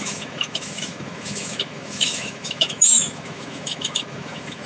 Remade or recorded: remade